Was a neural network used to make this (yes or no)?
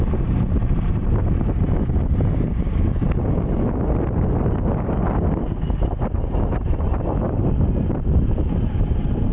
no